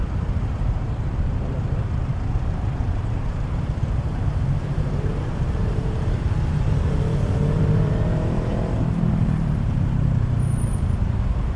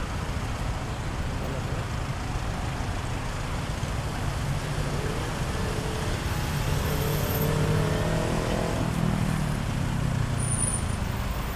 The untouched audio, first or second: second